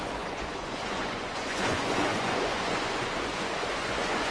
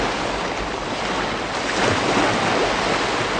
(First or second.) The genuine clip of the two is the second